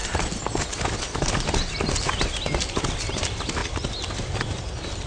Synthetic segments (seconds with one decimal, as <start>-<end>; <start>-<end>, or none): none